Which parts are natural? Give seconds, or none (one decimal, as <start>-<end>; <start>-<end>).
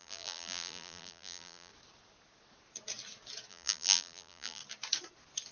1.7-3.5; 4.6-5.5